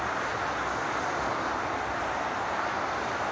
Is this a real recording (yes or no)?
yes